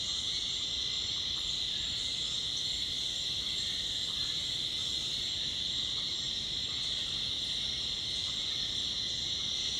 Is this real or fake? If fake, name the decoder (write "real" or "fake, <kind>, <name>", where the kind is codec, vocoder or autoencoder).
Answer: real